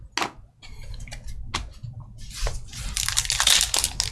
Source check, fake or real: real